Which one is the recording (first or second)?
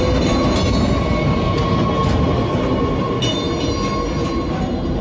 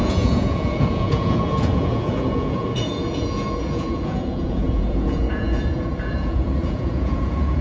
first